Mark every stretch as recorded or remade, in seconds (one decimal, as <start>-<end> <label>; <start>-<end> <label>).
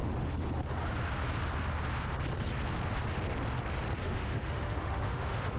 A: 0.0-4.0 recorded; 4.0-5.6 remade